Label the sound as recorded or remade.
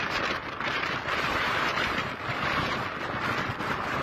recorded